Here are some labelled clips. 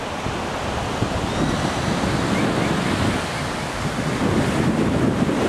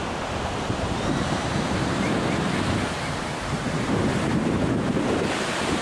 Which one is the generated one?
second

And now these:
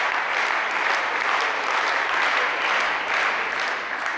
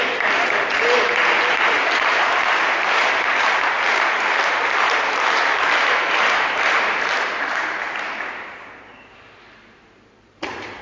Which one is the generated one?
second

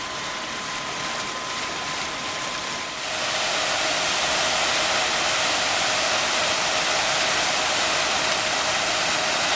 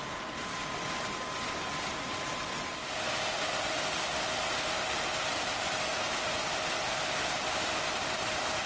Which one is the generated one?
first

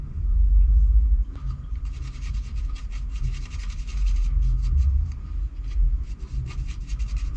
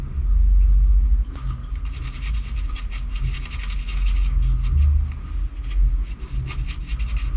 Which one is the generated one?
first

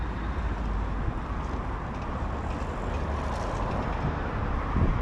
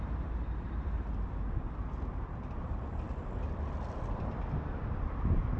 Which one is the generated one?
second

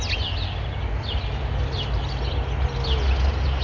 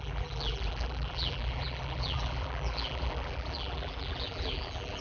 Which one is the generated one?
second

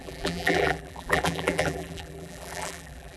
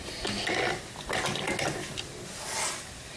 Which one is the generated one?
first